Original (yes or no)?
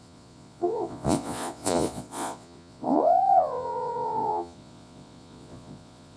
no